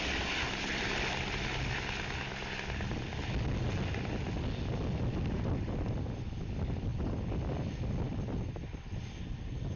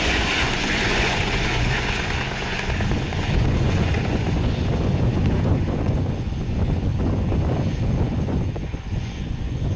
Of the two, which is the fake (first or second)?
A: second